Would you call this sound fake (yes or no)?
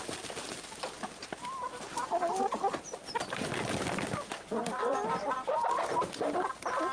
no